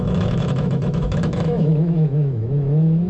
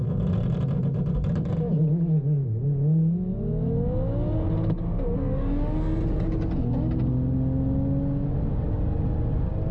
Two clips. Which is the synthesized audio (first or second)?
first